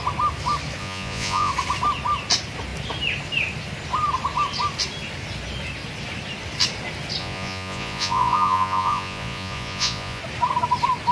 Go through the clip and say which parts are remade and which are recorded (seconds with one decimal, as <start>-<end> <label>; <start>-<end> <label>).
0.0-0.8 recorded; 0.8-1.5 remade; 1.5-7.2 recorded; 7.2-10.2 remade; 10.2-11.1 recorded